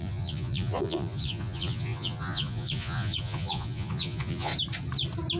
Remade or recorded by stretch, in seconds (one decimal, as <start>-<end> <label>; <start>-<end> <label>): 0.0-4.5 remade; 4.5-5.4 recorded